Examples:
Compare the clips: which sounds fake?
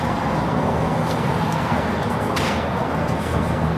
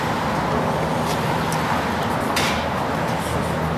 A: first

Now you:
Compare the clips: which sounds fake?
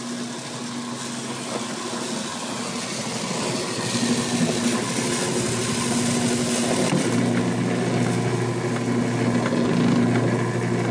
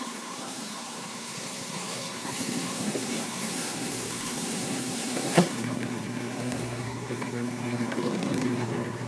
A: second